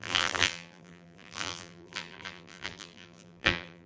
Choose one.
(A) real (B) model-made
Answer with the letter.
B